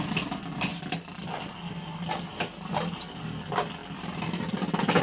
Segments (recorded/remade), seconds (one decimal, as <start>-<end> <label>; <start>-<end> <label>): 0.0-2.3 recorded; 2.3-3.2 remade; 3.2-5.0 recorded